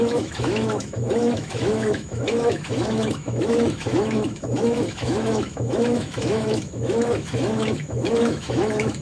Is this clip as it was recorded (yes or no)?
no